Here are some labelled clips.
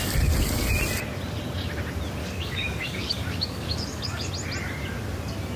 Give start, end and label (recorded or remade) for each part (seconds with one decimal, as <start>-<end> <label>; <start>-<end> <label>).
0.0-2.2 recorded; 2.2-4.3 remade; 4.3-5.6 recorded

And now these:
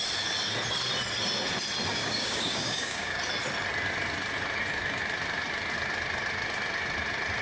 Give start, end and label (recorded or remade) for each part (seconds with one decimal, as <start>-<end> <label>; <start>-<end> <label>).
0.0-1.9 recorded; 1.9-3.2 remade; 3.2-7.4 recorded

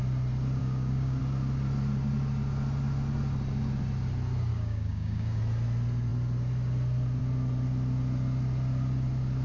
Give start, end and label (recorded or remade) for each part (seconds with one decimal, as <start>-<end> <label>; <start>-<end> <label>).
0.0-0.6 recorded; 0.6-1.2 remade; 1.2-4.5 recorded; 4.5-5.4 remade; 5.4-9.4 recorded

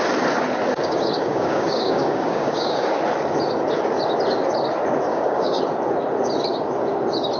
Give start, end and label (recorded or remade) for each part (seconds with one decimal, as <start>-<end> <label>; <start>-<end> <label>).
0.0-0.7 recorded; 0.7-3.0 remade; 3.0-5.1 recorded; 5.1-5.6 remade; 5.6-7.4 recorded

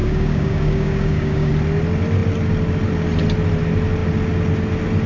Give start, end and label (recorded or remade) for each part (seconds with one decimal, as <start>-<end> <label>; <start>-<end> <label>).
0.0-1.5 remade; 1.5-5.1 recorded

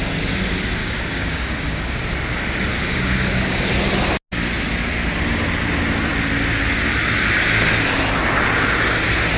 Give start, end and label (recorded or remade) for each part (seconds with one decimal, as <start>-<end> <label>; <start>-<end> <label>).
0.0-0.8 recorded; 0.8-2.0 remade; 2.0-2.7 recorded; 2.7-3.6 remade; 3.6-9.4 recorded

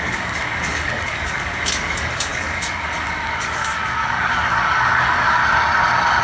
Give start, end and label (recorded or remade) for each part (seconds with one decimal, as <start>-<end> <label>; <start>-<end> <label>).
0.0-5.4 remade; 5.4-6.2 recorded